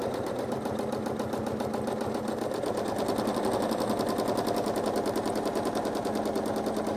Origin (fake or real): real